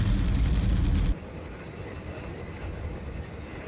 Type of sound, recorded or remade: recorded